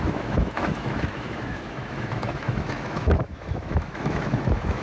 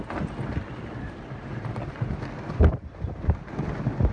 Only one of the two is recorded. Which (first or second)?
second